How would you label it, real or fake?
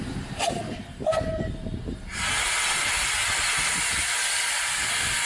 real